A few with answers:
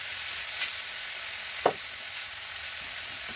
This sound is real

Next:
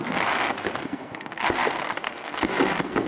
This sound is fake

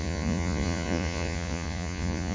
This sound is fake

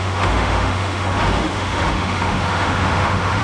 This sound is fake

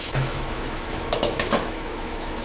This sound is fake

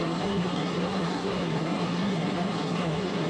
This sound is fake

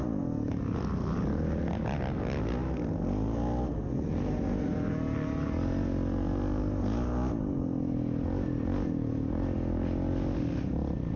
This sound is real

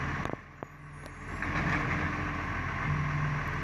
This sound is real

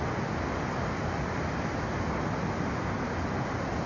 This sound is real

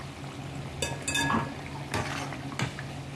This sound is real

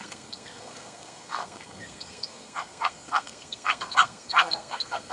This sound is fake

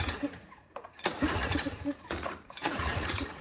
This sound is fake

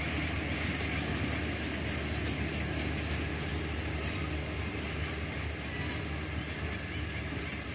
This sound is real